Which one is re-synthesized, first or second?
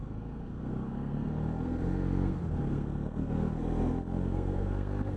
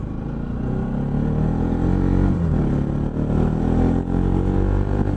first